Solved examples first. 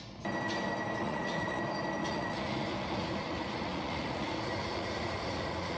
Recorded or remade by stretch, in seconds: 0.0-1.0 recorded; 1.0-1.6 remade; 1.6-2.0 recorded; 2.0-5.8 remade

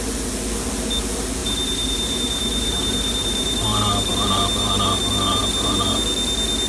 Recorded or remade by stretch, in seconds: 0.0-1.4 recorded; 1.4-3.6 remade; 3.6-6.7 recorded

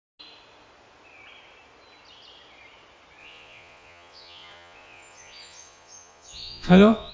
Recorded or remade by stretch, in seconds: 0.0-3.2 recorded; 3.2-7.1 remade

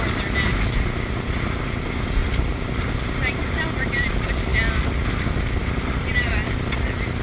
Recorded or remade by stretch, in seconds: 0.0-2.2 recorded; 2.2-3.5 remade; 3.5-5.6 recorded; 5.6-6.3 remade; 6.3-7.2 recorded